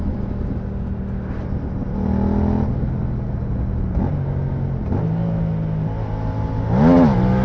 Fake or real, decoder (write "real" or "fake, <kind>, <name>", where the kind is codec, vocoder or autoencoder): real